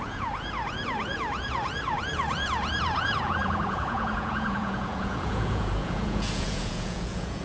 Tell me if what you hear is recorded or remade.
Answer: remade